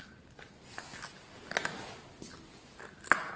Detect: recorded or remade recorded